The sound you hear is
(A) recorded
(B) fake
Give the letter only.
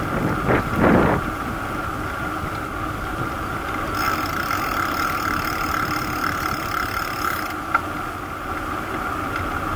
A